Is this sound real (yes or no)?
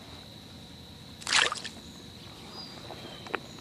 yes